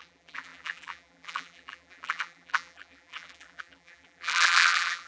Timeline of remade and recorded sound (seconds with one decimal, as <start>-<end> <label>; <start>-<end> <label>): 0.0-5.1 remade